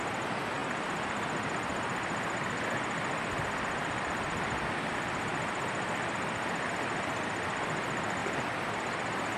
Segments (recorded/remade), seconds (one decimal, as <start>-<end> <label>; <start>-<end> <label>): 0.0-9.4 recorded